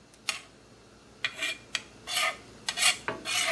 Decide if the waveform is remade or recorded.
recorded